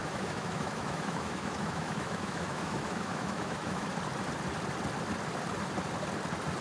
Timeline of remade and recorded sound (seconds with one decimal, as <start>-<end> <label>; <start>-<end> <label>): 0.0-3.9 remade; 3.9-6.6 recorded